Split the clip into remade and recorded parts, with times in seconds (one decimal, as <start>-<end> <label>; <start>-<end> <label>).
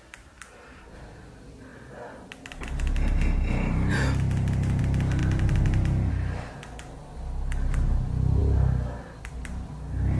0.0-10.2 recorded